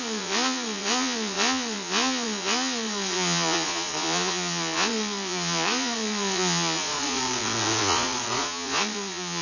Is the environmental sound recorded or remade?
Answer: remade